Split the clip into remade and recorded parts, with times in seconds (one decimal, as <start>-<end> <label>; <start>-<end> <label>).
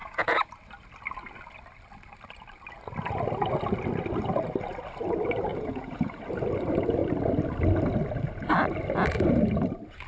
0.0-0.5 remade; 0.5-5.5 recorded; 5.5-6.2 remade; 6.2-10.1 recorded